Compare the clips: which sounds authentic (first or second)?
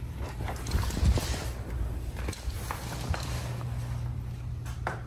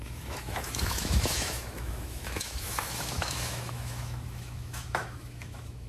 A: first